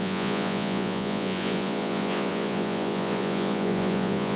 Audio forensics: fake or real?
fake